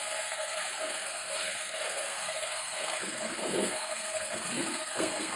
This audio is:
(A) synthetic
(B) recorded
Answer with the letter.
A